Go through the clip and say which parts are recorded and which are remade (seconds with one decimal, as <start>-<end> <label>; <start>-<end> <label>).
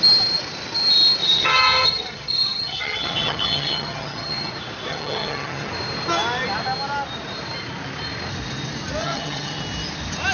0.0-1.2 recorded; 1.2-4.5 remade; 4.5-4.9 recorded; 4.9-5.7 remade; 5.7-9.0 recorded; 9.0-9.6 remade; 9.6-10.3 recorded